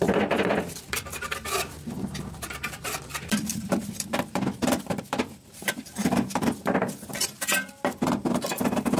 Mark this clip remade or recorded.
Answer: remade